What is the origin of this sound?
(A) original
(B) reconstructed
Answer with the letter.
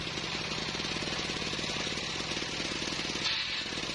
A